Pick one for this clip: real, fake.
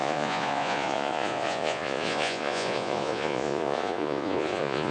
fake